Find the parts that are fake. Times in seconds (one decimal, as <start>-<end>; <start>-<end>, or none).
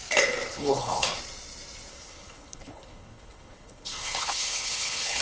0.5-1.2; 1.9-5.2